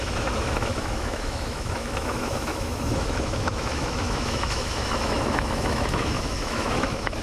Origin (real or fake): fake